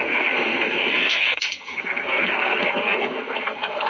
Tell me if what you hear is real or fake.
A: fake